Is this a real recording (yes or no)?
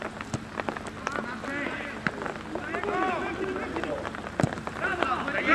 yes